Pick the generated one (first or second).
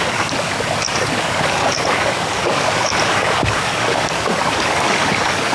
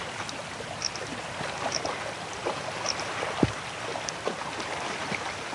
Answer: first